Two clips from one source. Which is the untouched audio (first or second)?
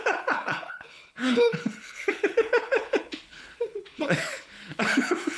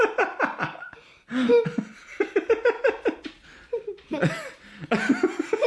second